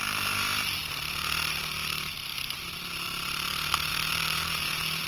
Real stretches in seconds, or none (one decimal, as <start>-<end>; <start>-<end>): 0.0-3.9